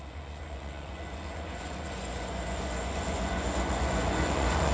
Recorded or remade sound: remade